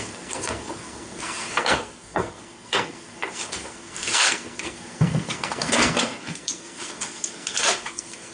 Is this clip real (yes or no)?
no